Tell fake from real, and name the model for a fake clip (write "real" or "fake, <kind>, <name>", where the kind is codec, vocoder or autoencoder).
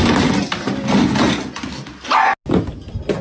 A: real